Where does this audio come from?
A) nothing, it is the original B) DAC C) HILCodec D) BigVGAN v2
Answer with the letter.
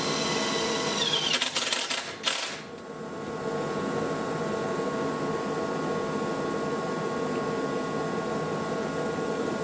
A